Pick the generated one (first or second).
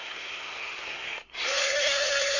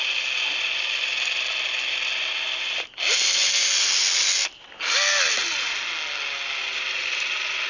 first